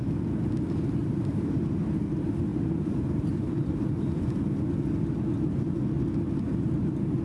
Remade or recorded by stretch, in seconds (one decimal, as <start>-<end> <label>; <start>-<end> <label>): 0.0-1.0 recorded; 1.0-2.0 remade; 2.0-2.5 recorded; 2.5-4.3 remade; 4.3-7.2 recorded